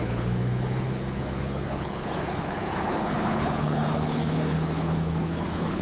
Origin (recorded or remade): remade